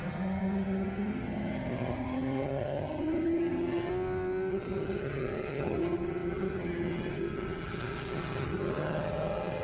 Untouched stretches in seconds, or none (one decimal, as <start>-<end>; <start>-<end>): 3.9-4.5